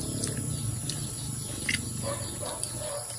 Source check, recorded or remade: recorded